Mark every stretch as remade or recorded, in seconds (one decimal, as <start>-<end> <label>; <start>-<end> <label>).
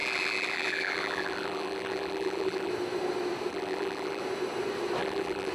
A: 0.0-2.7 remade; 2.7-3.5 recorded; 3.5-4.2 remade; 4.2-5.0 recorded; 5.0-5.5 remade